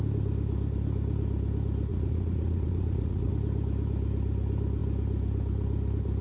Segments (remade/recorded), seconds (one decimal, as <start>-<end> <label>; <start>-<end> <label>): 0.0-1.9 recorded; 1.9-3.3 remade; 3.3-6.2 recorded